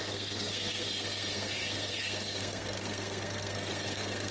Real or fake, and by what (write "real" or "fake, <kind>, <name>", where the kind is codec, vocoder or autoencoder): fake, codec, SNAC